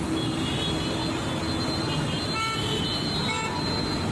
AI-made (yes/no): no